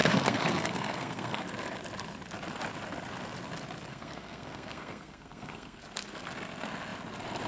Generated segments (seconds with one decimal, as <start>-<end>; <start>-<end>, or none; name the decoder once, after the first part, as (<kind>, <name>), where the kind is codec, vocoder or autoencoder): 0.0-1.4 (codec, SNAC); 3.9-5.8